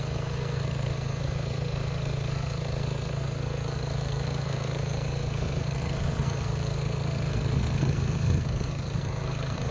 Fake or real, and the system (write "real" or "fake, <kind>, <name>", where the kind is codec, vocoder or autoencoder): fake, codec, SNAC